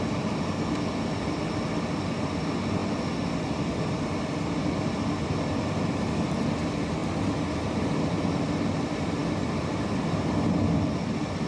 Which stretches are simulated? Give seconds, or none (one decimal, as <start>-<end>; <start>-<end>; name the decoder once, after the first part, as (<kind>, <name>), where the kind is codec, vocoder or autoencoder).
7.0-8.2 (vocoder, BigVGAN v2)